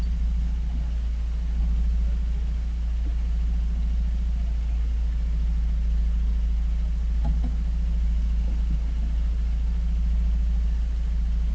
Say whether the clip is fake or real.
real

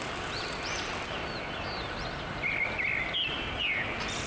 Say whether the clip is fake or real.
real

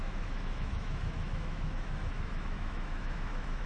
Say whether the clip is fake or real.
fake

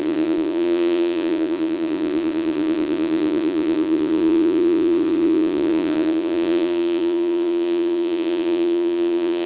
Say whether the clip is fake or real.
fake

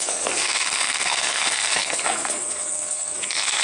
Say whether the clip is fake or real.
fake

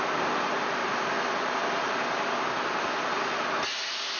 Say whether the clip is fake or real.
real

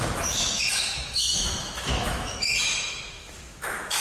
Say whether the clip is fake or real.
fake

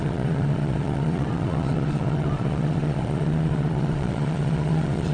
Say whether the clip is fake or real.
fake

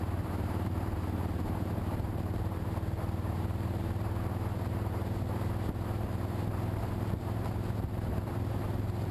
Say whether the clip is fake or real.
fake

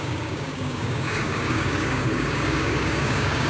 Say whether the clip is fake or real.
fake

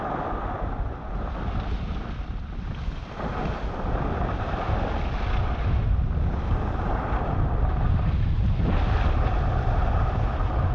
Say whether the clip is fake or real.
real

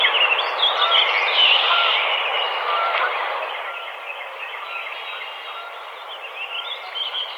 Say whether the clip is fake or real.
real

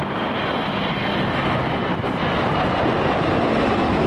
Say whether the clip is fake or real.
real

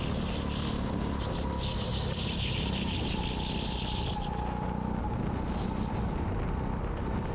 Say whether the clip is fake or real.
real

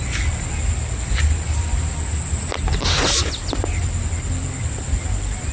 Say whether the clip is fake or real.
real